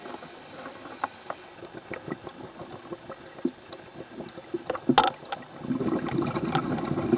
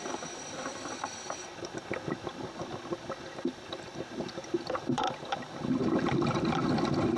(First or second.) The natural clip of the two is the first